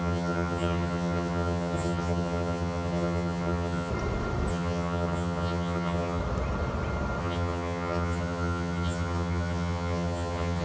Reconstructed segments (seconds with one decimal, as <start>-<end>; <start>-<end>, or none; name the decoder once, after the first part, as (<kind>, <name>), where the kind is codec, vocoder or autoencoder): 0.0-3.9 (vocoder, HiFi-GAN); 4.5-6.2; 7.2-10.6